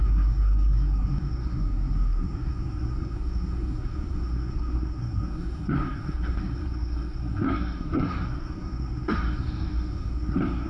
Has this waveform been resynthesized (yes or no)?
yes